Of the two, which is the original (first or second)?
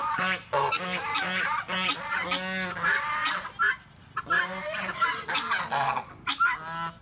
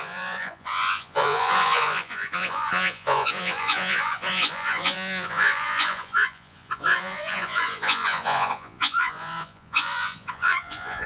first